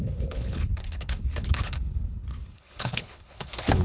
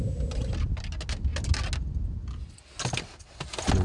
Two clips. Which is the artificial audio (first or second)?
first